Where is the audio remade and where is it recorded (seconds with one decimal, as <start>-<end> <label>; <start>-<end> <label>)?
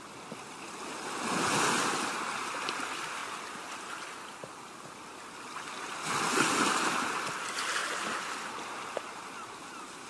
0.0-10.1 recorded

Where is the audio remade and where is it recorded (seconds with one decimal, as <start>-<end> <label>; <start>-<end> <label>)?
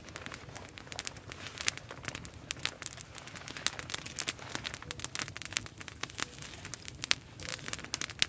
0.0-8.3 recorded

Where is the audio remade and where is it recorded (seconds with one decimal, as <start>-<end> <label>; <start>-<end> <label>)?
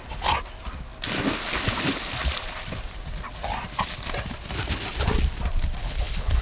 0.0-5.8 recorded; 5.8-6.4 remade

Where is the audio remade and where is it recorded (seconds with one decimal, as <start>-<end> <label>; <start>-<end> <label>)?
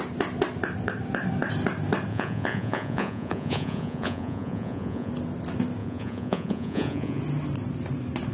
0.0-2.1 recorded; 2.1-5.1 remade; 5.1-5.8 recorded; 5.8-7.2 remade; 7.2-8.3 recorded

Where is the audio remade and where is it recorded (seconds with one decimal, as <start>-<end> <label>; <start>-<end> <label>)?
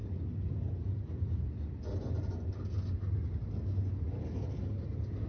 0.0-5.3 recorded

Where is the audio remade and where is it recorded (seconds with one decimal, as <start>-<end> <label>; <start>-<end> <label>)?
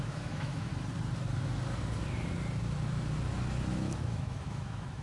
0.0-0.7 remade; 0.7-3.7 recorded; 3.7-5.0 remade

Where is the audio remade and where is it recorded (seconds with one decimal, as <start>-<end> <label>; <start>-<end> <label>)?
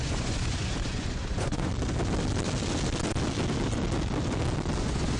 0.0-1.7 remade; 1.7-4.8 recorded; 4.8-5.2 remade